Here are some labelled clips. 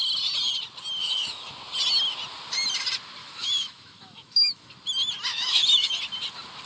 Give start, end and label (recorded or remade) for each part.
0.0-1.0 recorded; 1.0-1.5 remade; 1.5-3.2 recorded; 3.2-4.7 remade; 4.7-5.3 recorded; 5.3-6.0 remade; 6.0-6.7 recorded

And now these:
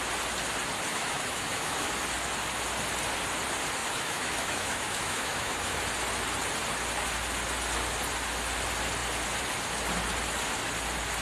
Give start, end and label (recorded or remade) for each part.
0.0-0.9 recorded; 0.9-1.9 remade; 1.9-3.8 recorded; 3.8-5.8 remade; 5.8-11.2 recorded

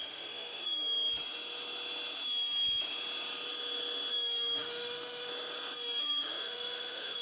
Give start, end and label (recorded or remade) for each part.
0.0-1.1 remade; 1.1-4.1 recorded; 4.1-5.3 remade; 5.3-6.0 recorded; 6.0-7.2 remade

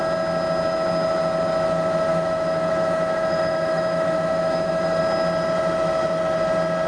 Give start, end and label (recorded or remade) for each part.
0.0-2.1 recorded; 2.1-5.0 remade; 5.0-6.9 recorded

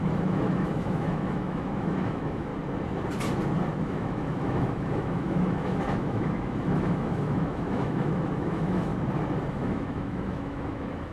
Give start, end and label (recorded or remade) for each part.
0.0-2.5 remade; 2.5-3.8 recorded; 3.8-8.9 remade; 8.9-9.5 recorded; 9.5-11.1 remade

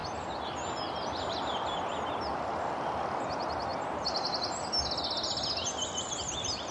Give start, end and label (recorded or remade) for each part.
0.0-6.7 recorded

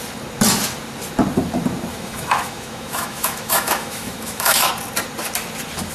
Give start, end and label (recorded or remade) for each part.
0.0-1.9 recorded; 1.9-4.7 remade; 4.7-5.9 recorded